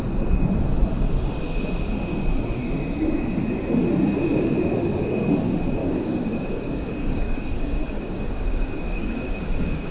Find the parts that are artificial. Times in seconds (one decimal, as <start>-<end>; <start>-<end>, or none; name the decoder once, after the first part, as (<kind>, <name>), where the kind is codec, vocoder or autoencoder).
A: 5.8-9.9 (codec, DAC)